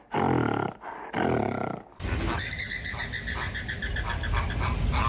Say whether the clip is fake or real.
real